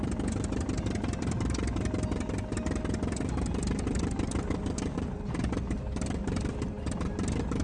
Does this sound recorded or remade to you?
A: recorded